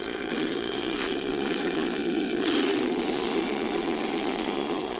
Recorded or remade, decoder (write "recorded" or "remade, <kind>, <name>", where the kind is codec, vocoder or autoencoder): remade, vocoder, Vocos